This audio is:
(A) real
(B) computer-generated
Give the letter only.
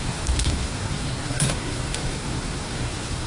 B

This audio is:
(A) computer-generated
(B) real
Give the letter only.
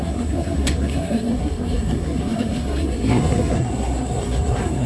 A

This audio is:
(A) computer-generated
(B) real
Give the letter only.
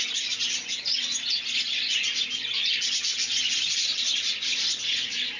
B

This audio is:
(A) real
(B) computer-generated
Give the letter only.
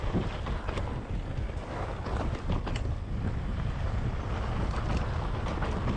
A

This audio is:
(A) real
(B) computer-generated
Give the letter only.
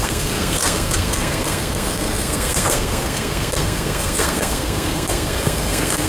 B